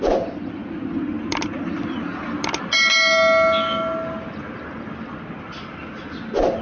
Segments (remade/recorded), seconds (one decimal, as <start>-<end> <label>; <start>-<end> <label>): 0.0-6.6 recorded